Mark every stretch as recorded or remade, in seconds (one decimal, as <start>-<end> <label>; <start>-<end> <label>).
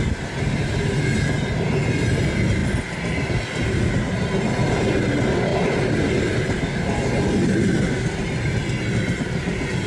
0.0-9.9 recorded